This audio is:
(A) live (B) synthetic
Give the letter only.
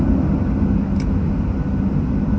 A